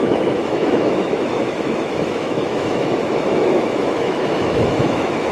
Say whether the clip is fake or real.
fake